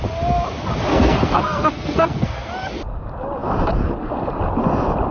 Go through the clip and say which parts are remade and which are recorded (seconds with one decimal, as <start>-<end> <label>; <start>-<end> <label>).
0.0-0.9 recorded; 0.9-2.5 remade; 2.5-5.1 recorded